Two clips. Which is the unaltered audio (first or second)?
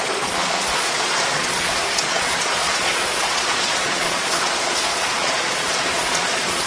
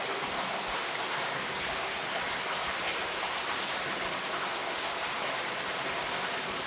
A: second